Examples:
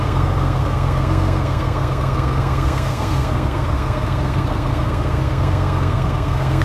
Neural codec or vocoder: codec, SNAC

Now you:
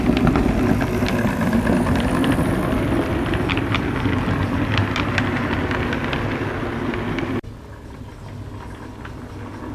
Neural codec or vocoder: none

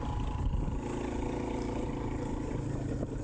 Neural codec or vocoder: none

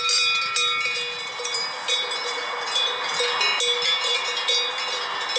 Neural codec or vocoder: none